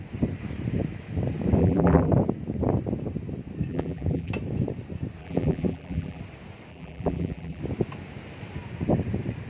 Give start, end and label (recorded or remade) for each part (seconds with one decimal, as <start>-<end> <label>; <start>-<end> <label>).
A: 0.0-1.6 recorded; 1.6-2.1 remade; 2.1-3.7 recorded; 3.7-4.3 remade; 4.3-5.2 recorded; 5.2-6.2 remade; 6.2-6.7 recorded; 6.7-7.6 remade; 7.6-9.5 recorded